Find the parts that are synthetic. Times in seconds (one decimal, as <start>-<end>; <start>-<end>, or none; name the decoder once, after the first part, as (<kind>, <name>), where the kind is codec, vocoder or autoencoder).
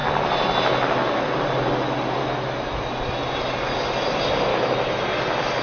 2.2-2.9 (autoencoder, DAC-VAE); 4.5-5.0